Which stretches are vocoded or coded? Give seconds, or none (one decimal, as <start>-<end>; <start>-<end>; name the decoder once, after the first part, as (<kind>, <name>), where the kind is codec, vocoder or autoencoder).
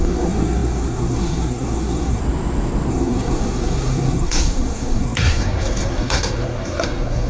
0.0-2.2 (codec, SNAC); 2.9-7.3